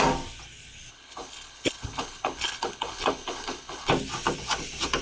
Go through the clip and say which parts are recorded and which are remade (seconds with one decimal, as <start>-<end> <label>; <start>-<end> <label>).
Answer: 0.0-0.9 recorded; 0.9-3.9 remade; 3.9-5.0 recorded